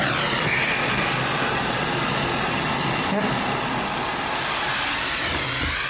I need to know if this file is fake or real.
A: real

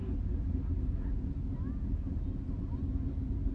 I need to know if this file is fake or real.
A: real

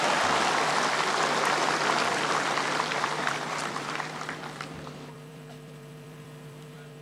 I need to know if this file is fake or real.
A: fake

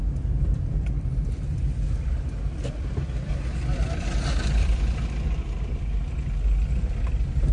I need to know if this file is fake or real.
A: real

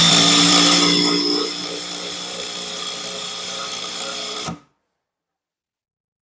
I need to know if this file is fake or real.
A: real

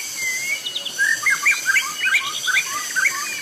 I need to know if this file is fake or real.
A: real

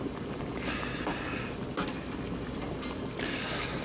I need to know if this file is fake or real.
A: real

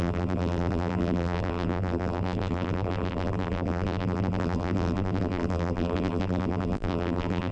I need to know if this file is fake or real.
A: fake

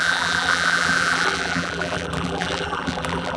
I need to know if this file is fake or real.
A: fake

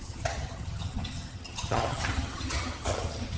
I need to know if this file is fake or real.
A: fake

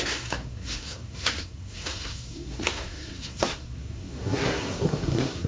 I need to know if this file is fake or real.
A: fake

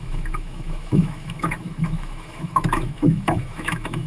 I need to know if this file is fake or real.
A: fake